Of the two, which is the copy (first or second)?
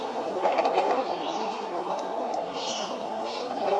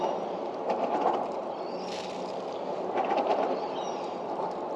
first